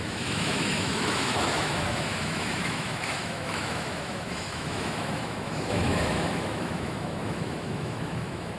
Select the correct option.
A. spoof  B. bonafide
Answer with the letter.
A